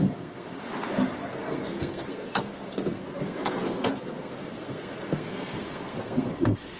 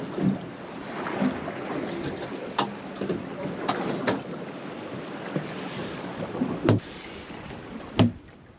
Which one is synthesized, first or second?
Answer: first